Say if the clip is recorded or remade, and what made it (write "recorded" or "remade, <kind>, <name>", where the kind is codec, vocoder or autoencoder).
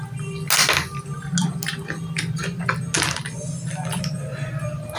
recorded